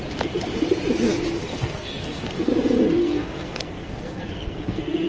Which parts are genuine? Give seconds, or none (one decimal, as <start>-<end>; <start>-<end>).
0.0-1.5; 2.5-3.0